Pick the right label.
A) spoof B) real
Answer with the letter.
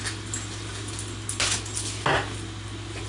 B